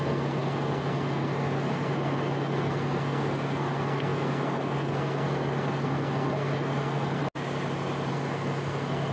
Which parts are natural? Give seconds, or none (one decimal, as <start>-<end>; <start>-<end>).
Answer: 7.2-8.1